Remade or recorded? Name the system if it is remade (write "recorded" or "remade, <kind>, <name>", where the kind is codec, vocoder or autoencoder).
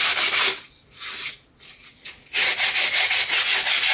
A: recorded